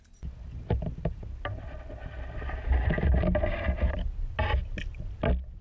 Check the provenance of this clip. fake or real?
real